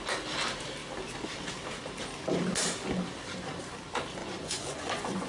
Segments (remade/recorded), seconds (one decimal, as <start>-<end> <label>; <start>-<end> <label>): 0.0-4.2 recorded; 4.2-5.3 remade